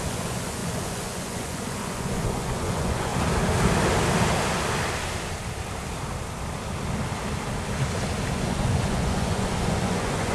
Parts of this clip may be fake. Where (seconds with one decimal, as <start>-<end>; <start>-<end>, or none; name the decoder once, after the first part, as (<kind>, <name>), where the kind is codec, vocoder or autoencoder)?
0.0-3.1 (vocoder, Vocos); 8.3-10.3